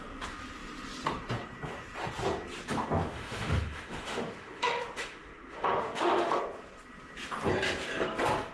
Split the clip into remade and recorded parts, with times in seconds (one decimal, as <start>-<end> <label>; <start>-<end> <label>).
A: 0.0-3.0 recorded; 3.0-6.4 remade; 6.4-8.5 recorded